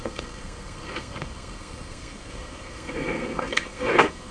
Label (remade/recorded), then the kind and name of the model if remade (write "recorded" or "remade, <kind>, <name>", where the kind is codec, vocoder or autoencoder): remade, codec, SNAC